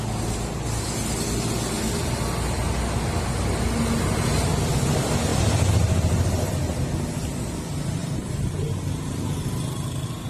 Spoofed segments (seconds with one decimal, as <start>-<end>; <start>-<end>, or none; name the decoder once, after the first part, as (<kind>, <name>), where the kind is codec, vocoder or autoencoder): 5.3-7.1 (vocoder, BigVGAN v2)